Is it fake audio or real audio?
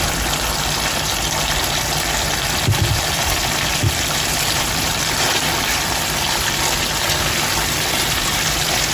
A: fake